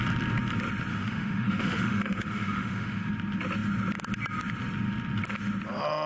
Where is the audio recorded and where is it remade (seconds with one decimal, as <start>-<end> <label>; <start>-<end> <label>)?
0.0-0.9 recorded; 0.9-3.1 remade; 3.1-6.1 recorded